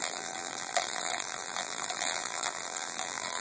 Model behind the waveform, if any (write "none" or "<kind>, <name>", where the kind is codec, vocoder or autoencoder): vocoder, BigVGAN v2